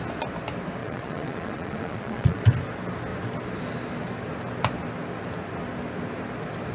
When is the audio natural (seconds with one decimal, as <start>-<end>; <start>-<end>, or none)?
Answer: 0.0-0.8; 2.4-6.7